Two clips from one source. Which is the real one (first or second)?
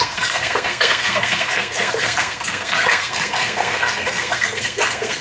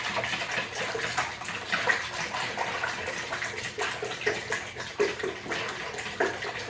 second